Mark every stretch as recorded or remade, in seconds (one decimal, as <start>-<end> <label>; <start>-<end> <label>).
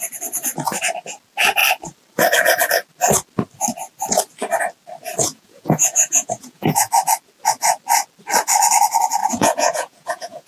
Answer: 0.0-5.2 recorded; 5.2-6.8 remade; 6.8-9.2 recorded; 9.2-10.5 remade